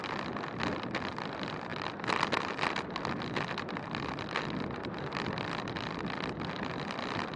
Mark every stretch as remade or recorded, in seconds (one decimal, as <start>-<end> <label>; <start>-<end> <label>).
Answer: 0.0-7.4 recorded